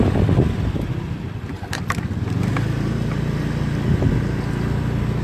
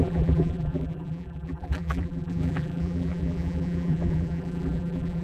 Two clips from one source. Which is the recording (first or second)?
first